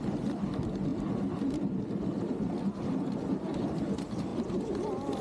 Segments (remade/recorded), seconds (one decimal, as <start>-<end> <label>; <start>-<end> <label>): 0.0-5.2 recorded